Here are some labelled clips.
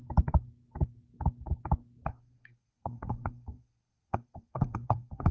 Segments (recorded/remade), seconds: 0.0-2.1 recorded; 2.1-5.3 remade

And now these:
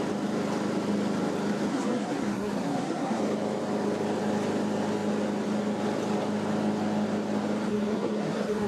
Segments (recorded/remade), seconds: 0.0-1.7 recorded; 1.7-3.2 remade; 3.2-7.7 recorded; 7.7-8.7 remade

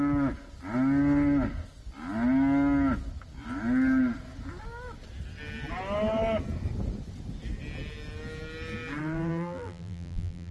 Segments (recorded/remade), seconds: 0.0-9.0 recorded; 9.0-10.5 remade

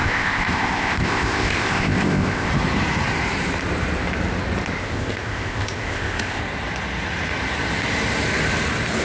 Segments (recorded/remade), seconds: 0.0-2.5 remade; 2.5-4.8 recorded; 4.8-6.4 remade; 6.4-9.0 recorded

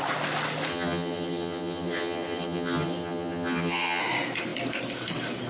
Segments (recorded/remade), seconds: 0.0-0.7 recorded; 0.7-4.0 remade; 4.0-5.5 recorded

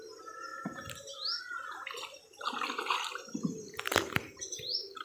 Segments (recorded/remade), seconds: 0.0-5.0 recorded